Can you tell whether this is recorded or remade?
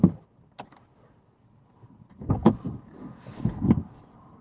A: recorded